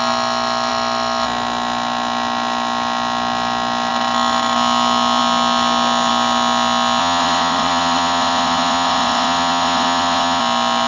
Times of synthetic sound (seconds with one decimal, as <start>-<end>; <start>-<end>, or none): 7.0-10.4